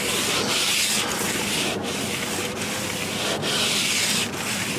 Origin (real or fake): real